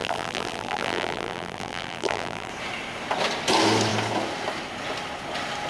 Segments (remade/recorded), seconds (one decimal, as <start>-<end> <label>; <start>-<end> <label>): 0.0-2.5 remade; 2.5-5.7 recorded